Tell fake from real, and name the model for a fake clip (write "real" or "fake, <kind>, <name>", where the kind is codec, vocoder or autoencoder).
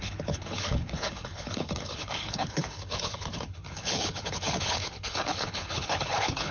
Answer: fake, codec, HILCodec